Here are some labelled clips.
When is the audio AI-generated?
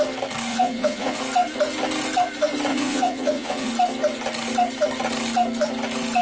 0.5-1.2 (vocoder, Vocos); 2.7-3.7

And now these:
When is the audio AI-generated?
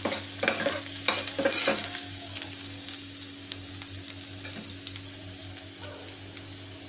1.7-3.7 (codec, DAC)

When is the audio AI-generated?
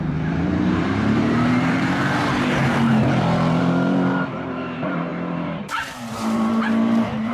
0.0-7.3 (vocoder, BigVGAN v2)